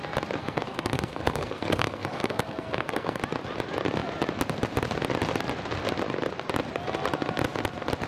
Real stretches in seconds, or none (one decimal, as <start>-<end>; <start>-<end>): 0.0-0.4; 3.2-8.1